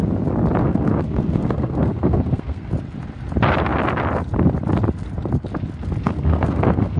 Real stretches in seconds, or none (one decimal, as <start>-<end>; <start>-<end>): 0.0-0.6; 2.7-6.0